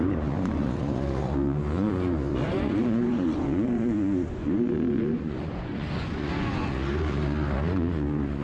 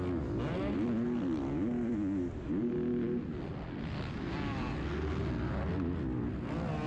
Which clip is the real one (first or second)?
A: second